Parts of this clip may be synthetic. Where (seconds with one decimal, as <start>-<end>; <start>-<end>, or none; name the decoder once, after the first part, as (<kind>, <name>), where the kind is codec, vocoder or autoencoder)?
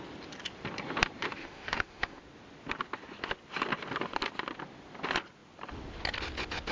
1.4-2.2 (autoencoder, DAC-VAE)